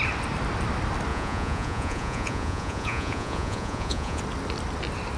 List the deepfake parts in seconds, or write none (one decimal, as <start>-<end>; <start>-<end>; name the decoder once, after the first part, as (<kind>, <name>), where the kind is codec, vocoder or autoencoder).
1.1-4.2 (vocoder, Vocos)